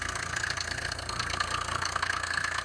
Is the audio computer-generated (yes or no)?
yes